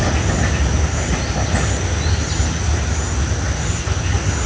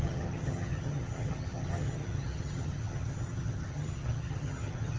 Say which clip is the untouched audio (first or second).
first